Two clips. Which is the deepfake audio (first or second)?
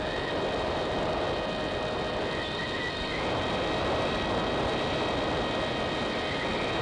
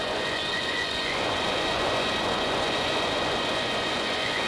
second